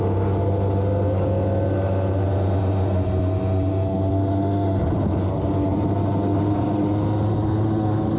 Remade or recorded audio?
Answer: recorded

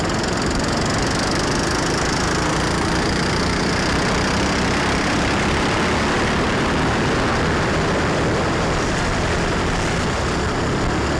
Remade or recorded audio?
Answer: recorded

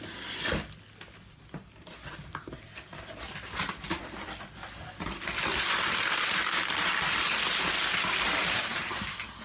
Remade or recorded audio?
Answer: recorded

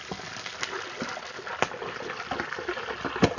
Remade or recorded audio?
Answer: recorded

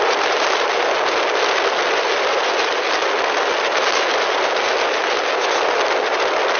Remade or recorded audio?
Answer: recorded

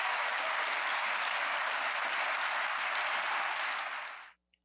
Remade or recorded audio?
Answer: recorded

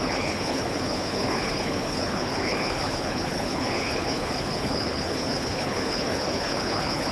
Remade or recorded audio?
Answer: remade